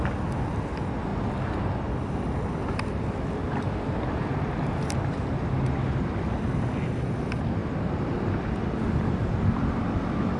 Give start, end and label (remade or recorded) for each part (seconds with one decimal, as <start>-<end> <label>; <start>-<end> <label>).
0.0-10.4 recorded